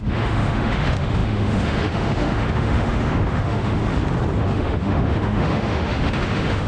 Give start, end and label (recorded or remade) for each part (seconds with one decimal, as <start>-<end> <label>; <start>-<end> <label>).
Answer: 0.0-3.8 remade; 3.8-4.4 recorded; 4.4-6.7 remade